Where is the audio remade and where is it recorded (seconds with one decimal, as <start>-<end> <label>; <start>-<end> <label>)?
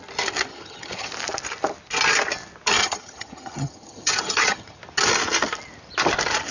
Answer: 0.0-0.5 recorded; 0.5-1.1 remade; 1.1-2.8 recorded; 2.8-4.8 remade; 4.8-6.5 recorded